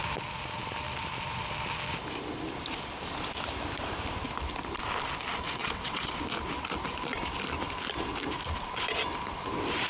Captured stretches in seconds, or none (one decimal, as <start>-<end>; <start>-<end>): 0.0-5.6; 6.1-9.9